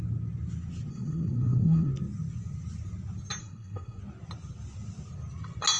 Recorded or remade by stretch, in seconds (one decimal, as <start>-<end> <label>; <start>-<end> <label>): 0.0-0.9 recorded; 0.9-1.9 remade; 1.9-3.4 recorded; 3.4-4.0 remade; 4.0-5.8 recorded

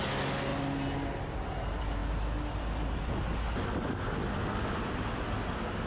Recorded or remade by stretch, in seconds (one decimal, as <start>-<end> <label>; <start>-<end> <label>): 0.0-5.9 recorded

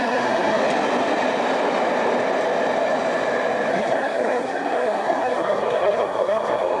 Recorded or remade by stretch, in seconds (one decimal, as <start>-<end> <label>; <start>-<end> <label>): 0.0-0.6 remade; 0.6-3.7 recorded; 3.7-6.8 remade

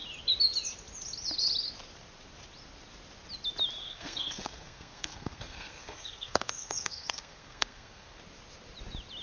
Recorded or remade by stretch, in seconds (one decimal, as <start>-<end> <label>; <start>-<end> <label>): 0.0-3.8 recorded; 3.8-8.2 remade; 8.2-9.2 recorded

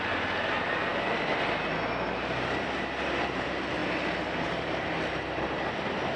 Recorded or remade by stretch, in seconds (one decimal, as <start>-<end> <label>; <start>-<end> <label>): 0.0-6.2 recorded